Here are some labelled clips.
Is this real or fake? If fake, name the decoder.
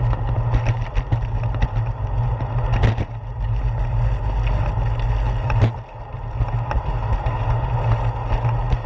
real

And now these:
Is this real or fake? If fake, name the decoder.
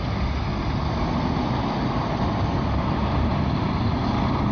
real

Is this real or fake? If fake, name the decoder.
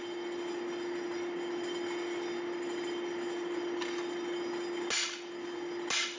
real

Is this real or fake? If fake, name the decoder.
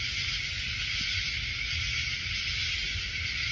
real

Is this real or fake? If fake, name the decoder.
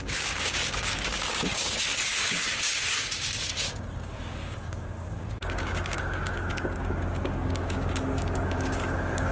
fake, codec, DAC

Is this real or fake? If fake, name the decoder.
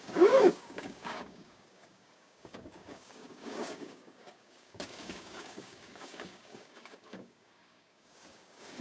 fake, codec, DAC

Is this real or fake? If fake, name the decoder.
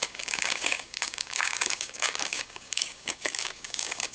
fake, codec, DAC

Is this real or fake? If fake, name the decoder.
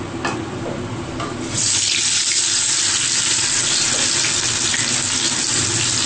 real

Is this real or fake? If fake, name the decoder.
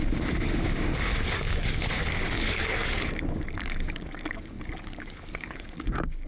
fake, codec, DAC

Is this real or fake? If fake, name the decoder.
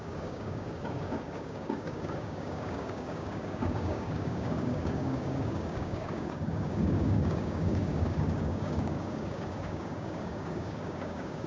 fake, codec, DAC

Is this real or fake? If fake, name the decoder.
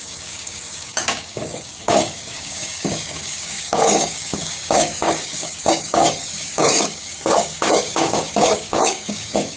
fake, codec, DAC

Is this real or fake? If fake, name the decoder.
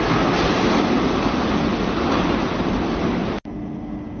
real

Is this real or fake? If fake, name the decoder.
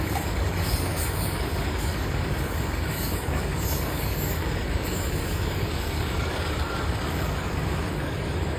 fake, codec, DAC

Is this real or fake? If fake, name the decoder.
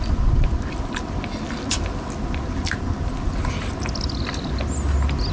real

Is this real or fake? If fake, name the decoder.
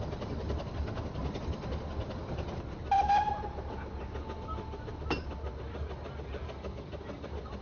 real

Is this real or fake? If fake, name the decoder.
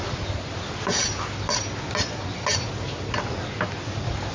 real